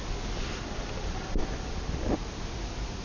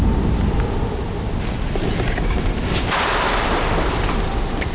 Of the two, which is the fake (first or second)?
second